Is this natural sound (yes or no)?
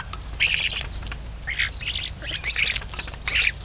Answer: yes